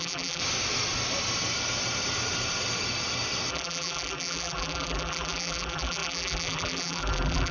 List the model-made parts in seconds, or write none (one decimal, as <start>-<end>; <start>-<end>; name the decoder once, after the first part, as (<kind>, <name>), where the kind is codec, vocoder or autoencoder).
0.0-0.4 (vocoder, BigVGAN v2); 3.5-7.5